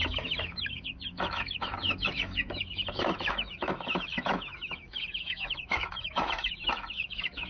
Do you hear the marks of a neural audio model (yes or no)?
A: yes